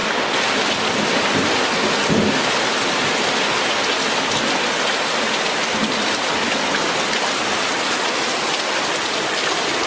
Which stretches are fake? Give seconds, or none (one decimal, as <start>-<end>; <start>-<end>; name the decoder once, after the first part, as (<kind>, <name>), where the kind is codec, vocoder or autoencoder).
none